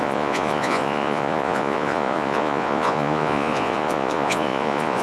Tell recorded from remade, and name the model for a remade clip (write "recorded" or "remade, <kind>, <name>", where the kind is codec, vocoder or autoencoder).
remade, vocoder, Vocos